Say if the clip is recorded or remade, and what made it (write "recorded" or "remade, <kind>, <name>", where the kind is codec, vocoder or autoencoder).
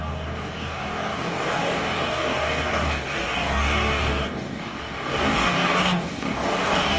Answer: remade, codec, DAC